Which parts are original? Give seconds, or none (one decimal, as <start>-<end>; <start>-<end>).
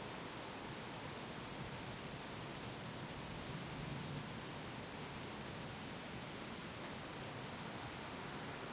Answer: 0.0-8.7